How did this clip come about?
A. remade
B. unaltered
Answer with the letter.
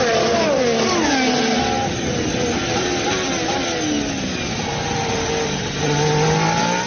B